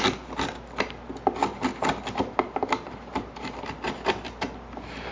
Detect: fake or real real